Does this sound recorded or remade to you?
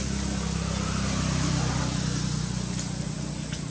recorded